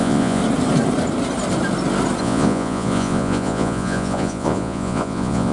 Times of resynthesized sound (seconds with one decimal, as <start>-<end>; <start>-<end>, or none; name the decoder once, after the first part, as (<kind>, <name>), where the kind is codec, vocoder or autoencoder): 0.0-0.4 (vocoder, Vocos); 2.2-5.5